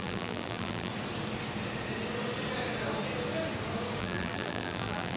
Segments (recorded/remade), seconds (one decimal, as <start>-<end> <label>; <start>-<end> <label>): 0.0-0.9 remade; 0.9-4.0 recorded; 4.0-5.2 remade